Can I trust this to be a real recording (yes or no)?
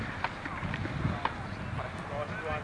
yes